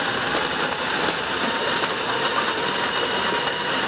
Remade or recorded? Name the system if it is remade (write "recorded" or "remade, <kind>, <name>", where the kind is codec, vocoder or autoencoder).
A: recorded